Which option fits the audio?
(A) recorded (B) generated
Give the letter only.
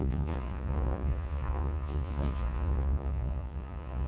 B